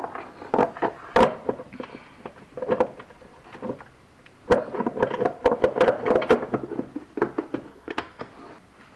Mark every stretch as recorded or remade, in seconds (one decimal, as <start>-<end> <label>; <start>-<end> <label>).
0.0-7.7 recorded; 7.7-8.3 remade; 8.3-9.0 recorded